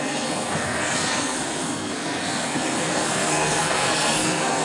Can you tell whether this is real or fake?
fake